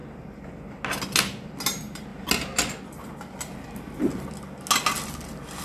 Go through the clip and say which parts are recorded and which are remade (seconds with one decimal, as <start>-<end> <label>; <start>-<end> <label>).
0.0-5.6 recorded